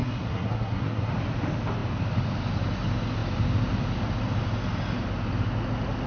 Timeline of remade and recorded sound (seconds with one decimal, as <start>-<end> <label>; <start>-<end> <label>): 0.0-1.1 remade; 1.1-6.1 recorded